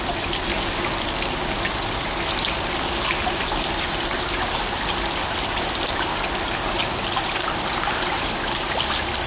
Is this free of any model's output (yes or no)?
yes